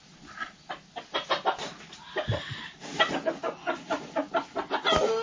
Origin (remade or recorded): recorded